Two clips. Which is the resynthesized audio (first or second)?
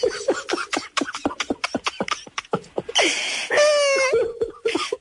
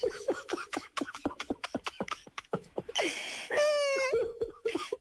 second